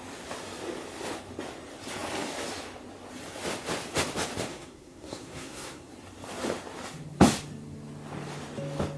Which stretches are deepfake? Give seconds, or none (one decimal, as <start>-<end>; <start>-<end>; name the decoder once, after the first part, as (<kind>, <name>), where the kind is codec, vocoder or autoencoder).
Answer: 4.5-5.9 (codec, SNAC)